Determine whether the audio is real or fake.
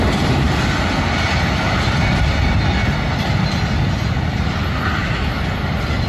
real